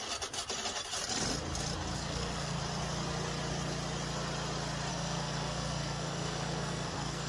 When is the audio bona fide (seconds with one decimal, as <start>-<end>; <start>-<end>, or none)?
0.0-2.0; 2.6-4.9